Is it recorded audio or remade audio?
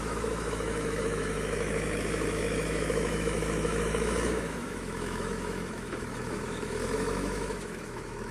remade